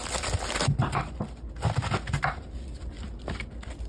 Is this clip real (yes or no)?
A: yes